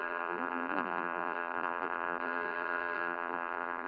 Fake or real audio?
fake